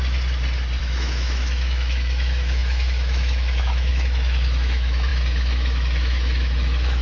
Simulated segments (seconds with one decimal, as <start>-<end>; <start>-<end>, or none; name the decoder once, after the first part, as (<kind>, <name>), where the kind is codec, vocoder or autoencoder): 0.8-7.0 (autoencoder, DAC-VAE)